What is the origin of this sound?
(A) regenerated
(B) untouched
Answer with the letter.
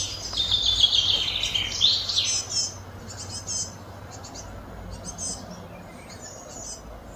B